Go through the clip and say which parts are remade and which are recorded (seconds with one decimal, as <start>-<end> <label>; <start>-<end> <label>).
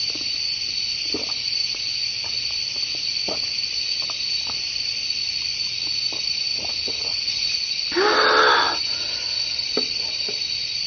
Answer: 0.0-6.5 recorded; 6.5-7.9 remade; 7.9-10.9 recorded